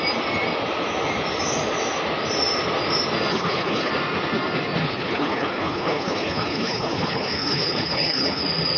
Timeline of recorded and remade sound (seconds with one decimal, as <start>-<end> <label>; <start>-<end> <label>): 0.0-3.3 recorded; 3.3-3.9 remade; 3.9-4.8 recorded; 4.8-8.4 remade; 8.4-8.8 recorded